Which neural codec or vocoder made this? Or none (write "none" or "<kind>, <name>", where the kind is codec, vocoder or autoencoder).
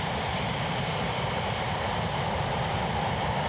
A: vocoder, BigVGAN v2